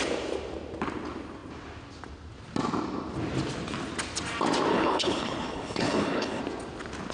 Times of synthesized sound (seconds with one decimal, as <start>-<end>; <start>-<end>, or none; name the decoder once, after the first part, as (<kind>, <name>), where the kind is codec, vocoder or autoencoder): 4.7-6.4 (codec, HILCodec)